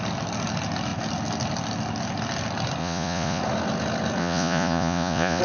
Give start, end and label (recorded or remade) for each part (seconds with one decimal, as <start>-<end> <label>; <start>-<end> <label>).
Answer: 0.0-2.8 recorded; 2.8-3.4 remade; 3.4-4.2 recorded; 4.2-5.4 remade